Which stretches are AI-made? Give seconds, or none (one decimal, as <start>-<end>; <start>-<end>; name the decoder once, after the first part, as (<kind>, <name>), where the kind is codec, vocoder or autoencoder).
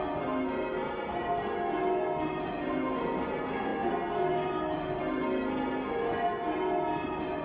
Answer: none